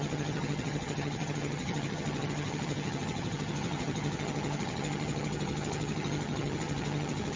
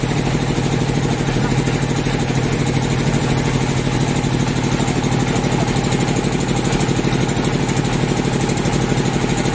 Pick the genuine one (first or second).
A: second